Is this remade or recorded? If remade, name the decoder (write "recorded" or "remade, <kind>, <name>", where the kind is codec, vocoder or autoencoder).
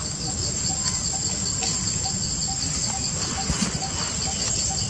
recorded